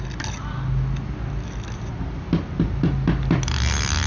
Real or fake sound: real